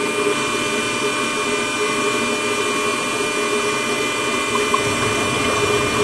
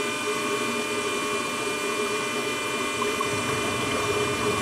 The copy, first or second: second